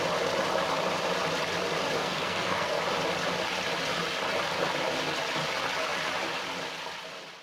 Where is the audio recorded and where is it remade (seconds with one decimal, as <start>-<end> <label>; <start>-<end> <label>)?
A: 0.0-2.0 recorded; 2.0-2.8 remade; 2.8-7.4 recorded